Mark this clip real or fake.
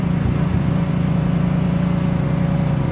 fake